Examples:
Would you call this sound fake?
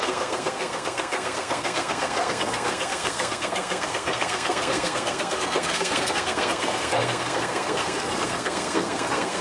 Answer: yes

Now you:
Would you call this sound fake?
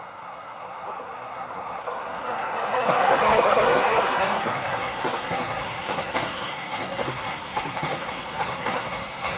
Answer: yes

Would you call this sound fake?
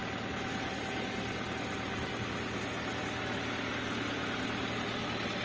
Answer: no